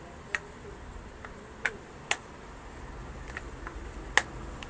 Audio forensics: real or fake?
real